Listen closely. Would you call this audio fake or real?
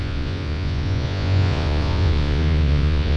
fake